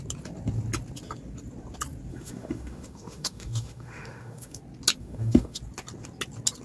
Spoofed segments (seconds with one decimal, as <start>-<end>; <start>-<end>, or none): 2.1-4.6; 5.0-5.6